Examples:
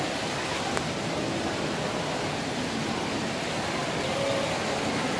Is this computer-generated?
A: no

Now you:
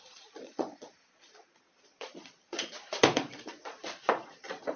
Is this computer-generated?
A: yes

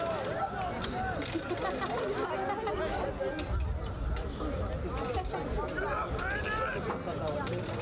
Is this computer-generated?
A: no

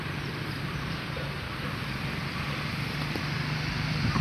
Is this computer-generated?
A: no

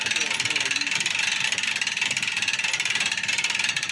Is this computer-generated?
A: yes